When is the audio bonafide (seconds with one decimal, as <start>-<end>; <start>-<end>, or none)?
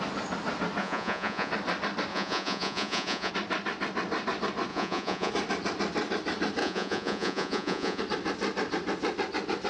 0.0-0.8; 1.5-2.1; 3.3-4.7; 5.3-6.6; 8.0-9.7